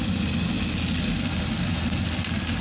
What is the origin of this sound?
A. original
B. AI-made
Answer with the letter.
A